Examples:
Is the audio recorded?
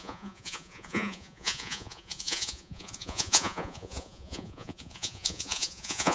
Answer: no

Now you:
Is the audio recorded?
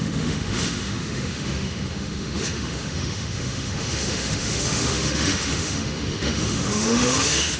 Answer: no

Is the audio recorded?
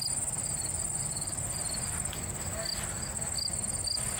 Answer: yes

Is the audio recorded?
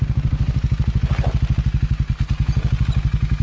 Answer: yes